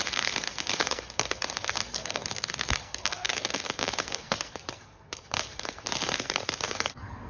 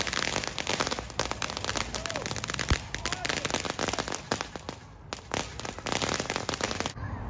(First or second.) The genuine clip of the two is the second